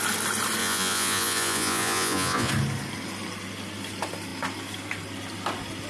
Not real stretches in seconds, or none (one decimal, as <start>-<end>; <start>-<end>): 0.6-2.5